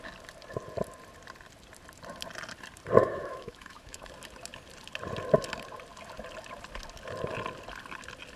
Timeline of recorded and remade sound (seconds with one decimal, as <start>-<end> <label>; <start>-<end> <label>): 0.0-3.0 recorded; 3.0-4.1 remade; 4.1-8.4 recorded